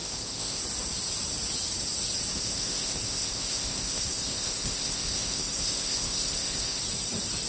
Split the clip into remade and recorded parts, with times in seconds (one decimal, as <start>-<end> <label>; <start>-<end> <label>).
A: 0.0-0.6 remade; 0.6-2.3 recorded; 2.3-6.8 remade; 6.8-7.5 recorded